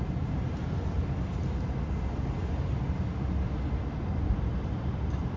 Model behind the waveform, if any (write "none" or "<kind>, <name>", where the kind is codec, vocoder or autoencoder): none